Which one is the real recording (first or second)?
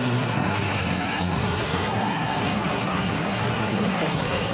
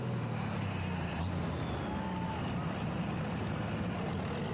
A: second